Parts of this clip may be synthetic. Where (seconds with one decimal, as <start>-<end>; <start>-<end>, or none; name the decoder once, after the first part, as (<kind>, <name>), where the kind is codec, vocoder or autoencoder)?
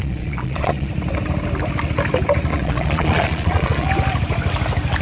0.0-0.9 (vocoder, Vocos); 2.5-3.9